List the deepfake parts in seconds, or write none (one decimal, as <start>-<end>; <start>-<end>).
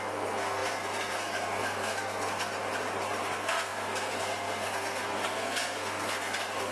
0.0-2.5; 3.2-6.7